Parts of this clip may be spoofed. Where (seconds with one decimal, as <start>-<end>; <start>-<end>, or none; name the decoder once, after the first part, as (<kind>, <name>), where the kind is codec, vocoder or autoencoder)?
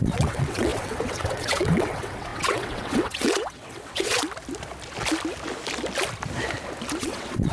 0.0-4.2 (vocoder, WaveNeXt); 7.0-7.5